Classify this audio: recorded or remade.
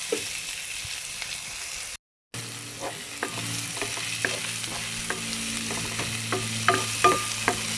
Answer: recorded